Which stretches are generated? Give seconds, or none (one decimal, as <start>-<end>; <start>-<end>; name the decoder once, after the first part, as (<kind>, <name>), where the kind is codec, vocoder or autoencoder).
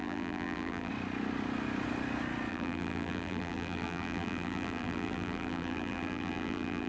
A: 0.0-0.9 (vocoder, BigVGAN v2); 2.5-6.9